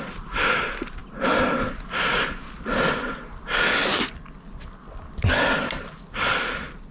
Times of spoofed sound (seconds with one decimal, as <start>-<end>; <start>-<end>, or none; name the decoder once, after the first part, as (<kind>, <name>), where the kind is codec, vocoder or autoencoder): none